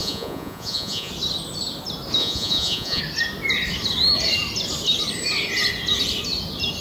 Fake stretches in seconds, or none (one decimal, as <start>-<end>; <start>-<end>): 0.0-1.1; 2.2-3.0